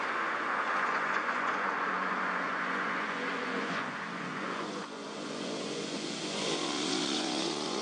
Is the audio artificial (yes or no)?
yes